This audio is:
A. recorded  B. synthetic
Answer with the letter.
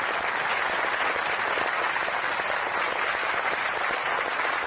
A